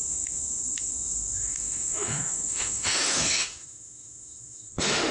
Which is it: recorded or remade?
remade